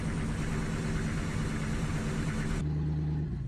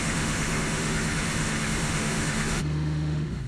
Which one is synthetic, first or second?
second